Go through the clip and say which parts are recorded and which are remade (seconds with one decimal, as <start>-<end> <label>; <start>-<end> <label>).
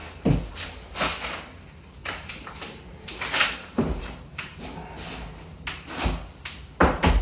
0.0-2.0 recorded; 2.0-4.6 remade; 4.6-7.2 recorded